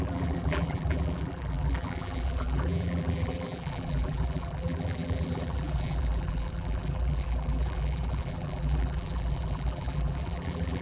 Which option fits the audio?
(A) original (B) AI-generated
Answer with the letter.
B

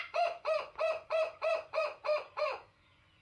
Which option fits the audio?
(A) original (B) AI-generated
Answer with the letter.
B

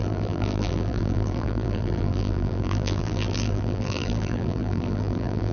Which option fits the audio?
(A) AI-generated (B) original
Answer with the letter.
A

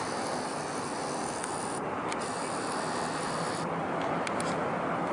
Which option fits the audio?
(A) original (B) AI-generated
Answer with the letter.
A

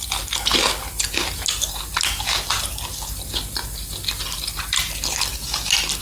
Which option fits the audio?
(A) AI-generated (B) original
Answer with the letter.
B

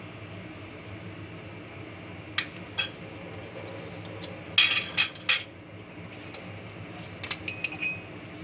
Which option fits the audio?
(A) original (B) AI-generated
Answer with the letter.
A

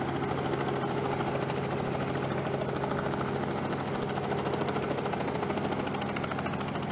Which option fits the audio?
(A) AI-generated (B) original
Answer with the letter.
B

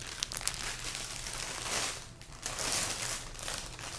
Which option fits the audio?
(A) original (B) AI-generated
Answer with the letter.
A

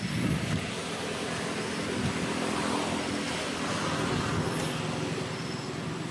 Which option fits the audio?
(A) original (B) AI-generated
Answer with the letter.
A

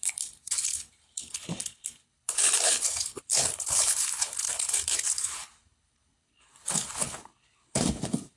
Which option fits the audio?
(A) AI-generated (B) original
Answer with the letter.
A